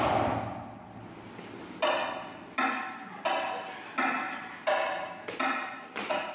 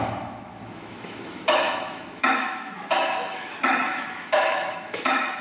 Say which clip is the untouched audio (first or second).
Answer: first